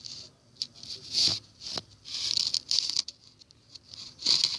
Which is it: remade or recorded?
recorded